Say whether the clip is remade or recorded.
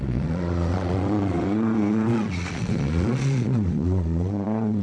remade